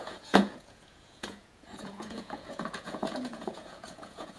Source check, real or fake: fake